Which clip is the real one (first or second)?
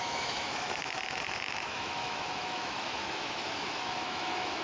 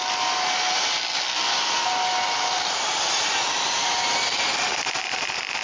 second